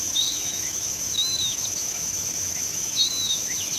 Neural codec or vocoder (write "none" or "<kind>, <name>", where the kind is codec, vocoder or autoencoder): autoencoder, DAC-VAE